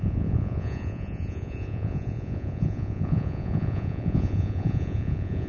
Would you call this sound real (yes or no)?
no